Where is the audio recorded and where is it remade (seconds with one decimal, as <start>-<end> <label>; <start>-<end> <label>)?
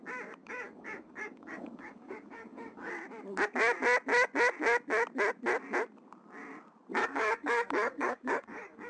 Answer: 0.0-0.4 recorded; 0.4-2.9 remade; 2.9-7.0 recorded; 7.0-8.9 remade